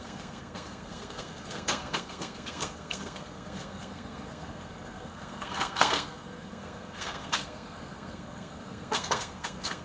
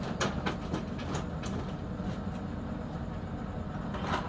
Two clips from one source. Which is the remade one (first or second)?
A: first